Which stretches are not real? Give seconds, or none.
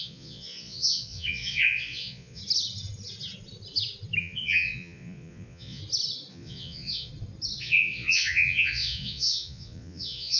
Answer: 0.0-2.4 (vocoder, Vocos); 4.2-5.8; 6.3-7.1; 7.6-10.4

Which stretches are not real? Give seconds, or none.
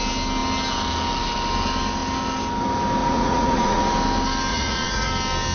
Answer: 3.0-3.8 (vocoder, Vocos); 4.5-5.1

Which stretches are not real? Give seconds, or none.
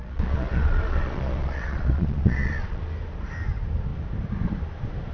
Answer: 0.0-2.8 (vocoder, Vocos)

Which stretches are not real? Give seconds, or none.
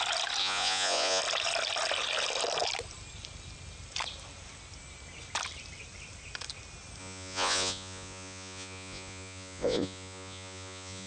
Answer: 0.4-1.2 (vocoder, Vocos); 7.0-11.1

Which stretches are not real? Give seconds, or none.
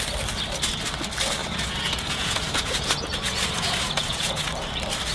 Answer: 1.4-4.5 (vocoder, Vocos)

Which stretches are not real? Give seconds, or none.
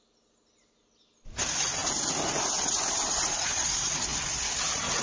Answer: none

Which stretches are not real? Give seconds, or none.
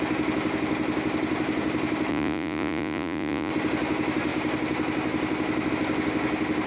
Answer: 2.1-3.5 (vocoder, Vocos)